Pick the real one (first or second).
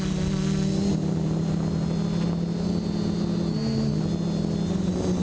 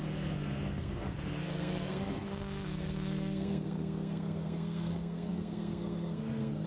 first